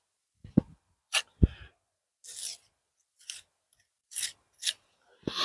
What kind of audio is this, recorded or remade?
recorded